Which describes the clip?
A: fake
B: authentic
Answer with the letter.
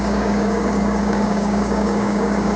A